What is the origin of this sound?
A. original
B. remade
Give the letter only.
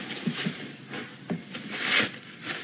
A